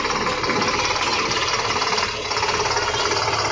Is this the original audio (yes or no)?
yes